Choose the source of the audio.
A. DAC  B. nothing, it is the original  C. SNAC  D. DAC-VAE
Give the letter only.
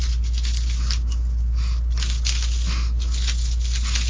B